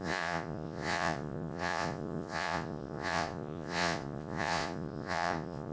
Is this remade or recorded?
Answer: remade